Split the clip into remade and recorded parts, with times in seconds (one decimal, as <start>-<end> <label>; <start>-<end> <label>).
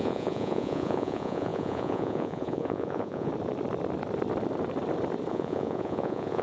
0.0-3.3 remade; 3.3-5.3 recorded; 5.3-6.4 remade